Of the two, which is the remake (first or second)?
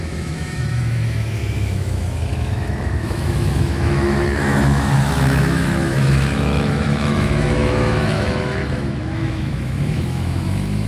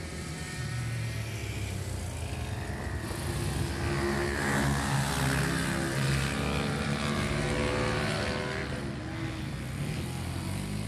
first